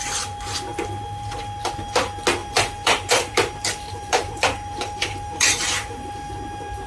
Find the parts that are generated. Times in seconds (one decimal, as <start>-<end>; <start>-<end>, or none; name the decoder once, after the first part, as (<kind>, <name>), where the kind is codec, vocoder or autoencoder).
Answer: 2.4-6.1 (vocoder, BigVGAN v2)